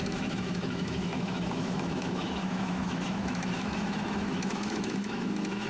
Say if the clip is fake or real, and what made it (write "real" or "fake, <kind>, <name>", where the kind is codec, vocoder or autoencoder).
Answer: fake, autoencoder, DAC-VAE